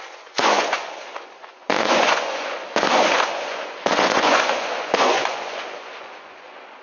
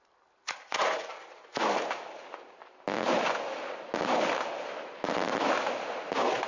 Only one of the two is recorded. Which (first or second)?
second